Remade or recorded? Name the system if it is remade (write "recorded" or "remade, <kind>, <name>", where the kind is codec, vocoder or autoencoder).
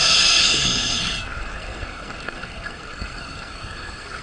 remade, codec, SNAC